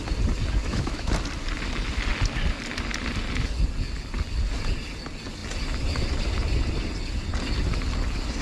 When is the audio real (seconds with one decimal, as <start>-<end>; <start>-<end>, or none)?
0.0-0.6; 1.1-8.4